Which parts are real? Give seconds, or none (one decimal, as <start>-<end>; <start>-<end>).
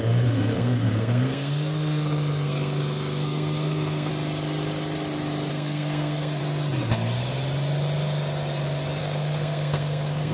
4.1-5.5; 6.4-9.0